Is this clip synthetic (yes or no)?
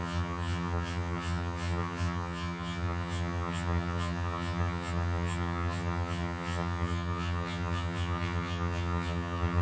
yes